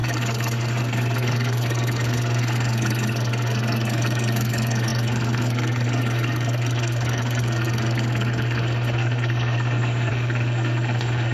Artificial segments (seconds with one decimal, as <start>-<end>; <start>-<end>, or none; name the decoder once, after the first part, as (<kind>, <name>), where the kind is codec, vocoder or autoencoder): 0.0-11.3 (codec, SNAC)